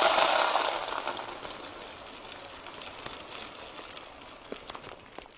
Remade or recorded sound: recorded